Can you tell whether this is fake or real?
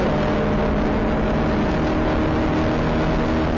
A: real